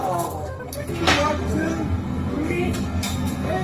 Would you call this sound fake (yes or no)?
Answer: yes